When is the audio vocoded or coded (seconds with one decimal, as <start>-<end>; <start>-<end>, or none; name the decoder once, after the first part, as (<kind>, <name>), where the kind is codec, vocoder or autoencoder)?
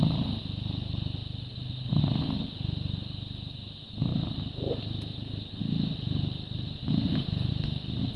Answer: 1.2-1.7 (vocoder, BigVGAN v2); 5.6-7.5